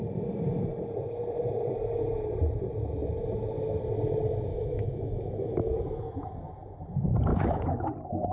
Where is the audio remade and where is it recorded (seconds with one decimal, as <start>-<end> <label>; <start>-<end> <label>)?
0.0-4.5 recorded; 4.5-6.3 remade; 6.3-7.3 recorded; 7.3-7.9 remade; 7.9-8.3 recorded